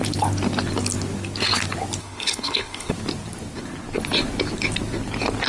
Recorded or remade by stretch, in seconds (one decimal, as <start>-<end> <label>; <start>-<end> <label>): 0.0-2.0 recorded; 2.0-2.9 remade; 2.9-5.5 recorded